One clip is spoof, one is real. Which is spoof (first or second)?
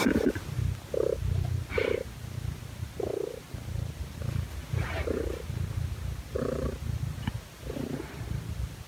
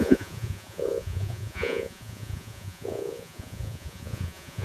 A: second